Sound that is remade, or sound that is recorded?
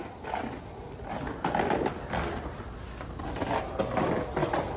recorded